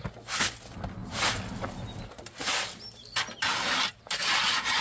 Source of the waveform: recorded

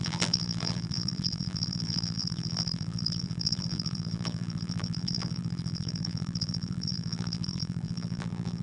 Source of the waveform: remade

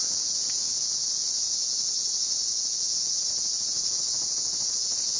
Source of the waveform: remade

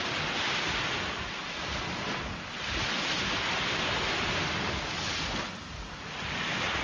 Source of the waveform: recorded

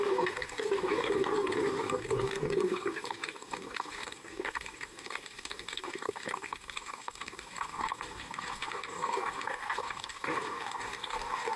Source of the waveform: remade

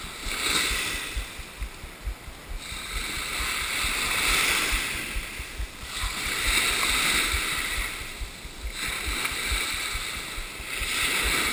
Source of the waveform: recorded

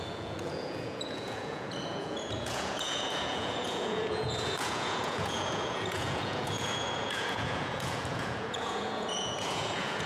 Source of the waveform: remade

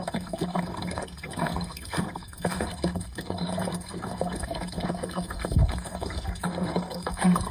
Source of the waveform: remade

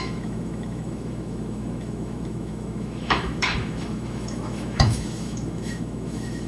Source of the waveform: remade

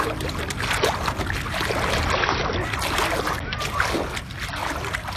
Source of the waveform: recorded